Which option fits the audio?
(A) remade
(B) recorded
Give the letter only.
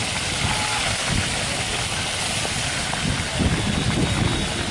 B